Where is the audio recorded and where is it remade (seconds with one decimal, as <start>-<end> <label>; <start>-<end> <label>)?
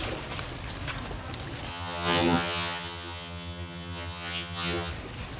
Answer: 0.0-1.7 recorded; 1.7-4.9 remade; 4.9-5.4 recorded